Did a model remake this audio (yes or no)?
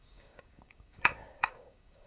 yes